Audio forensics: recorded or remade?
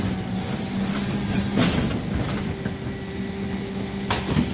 recorded